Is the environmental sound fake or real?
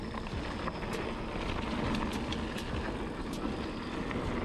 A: real